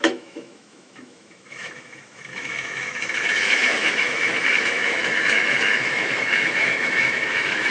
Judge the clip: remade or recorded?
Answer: remade